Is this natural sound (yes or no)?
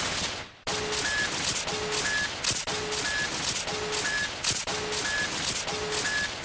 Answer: yes